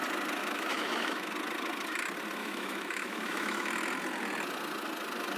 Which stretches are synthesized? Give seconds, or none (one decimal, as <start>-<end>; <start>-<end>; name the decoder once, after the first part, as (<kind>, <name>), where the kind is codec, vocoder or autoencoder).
0.4-1.3 (autoencoder, DAC-VAE); 2.4-3.7